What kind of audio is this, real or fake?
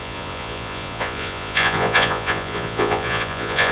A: fake